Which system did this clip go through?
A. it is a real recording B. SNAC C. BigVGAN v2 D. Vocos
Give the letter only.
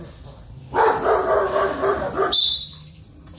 C